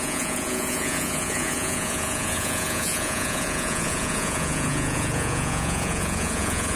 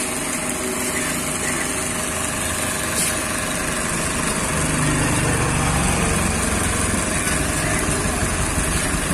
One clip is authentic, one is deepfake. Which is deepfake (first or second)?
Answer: first